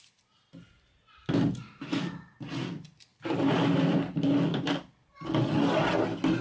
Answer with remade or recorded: recorded